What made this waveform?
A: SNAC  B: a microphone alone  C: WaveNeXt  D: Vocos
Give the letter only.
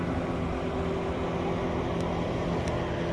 B